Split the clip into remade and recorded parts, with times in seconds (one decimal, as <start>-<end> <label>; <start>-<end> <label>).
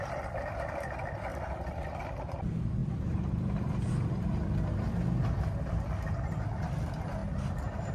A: 0.0-7.9 recorded